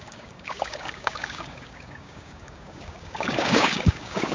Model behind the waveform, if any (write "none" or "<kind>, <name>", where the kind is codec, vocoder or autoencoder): codec, DAC